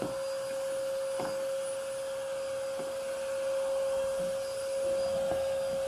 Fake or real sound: real